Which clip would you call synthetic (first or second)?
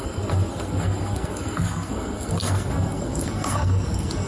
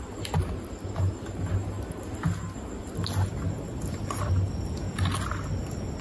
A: first